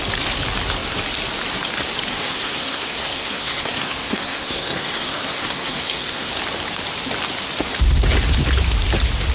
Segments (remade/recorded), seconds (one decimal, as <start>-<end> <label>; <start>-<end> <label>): 0.0-2.1 recorded; 2.1-6.3 remade; 6.3-9.3 recorded